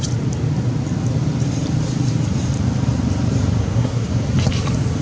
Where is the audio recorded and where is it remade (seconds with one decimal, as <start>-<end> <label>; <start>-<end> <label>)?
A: 0.0-3.6 recorded; 3.6-4.1 remade; 4.1-5.0 recorded